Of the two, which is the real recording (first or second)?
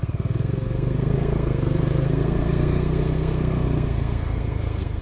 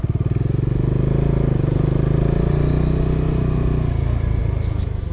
second